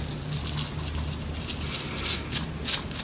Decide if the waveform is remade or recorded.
recorded